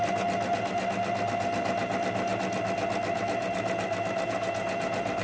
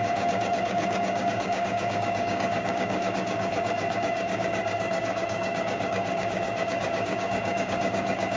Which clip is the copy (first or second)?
second